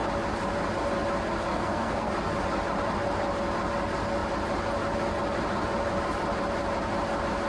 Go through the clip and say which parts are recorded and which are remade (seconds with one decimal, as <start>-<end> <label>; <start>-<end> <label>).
0.0-1.5 recorded; 1.5-2.1 remade; 2.1-7.5 recorded